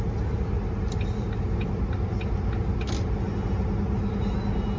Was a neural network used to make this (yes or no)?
no